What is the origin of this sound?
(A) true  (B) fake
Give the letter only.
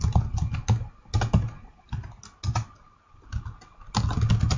A